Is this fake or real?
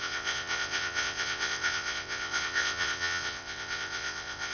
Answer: fake